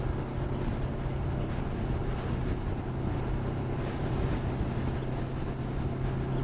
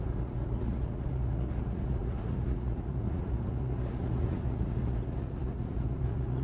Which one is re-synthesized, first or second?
second